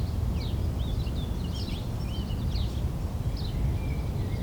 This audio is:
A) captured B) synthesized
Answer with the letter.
A